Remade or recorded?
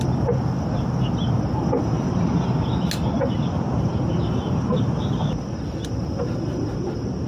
recorded